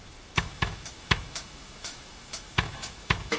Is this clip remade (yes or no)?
yes